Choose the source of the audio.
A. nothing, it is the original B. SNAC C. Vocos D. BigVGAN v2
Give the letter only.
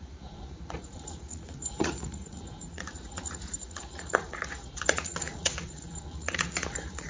C